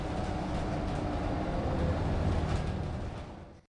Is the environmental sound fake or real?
real